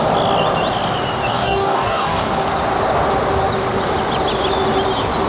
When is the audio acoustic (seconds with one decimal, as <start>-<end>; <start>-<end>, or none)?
0.0-1.3; 2.3-5.3